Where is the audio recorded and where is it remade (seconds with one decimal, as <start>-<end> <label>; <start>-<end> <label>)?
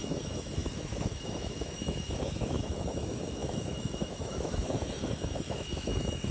0.0-6.3 remade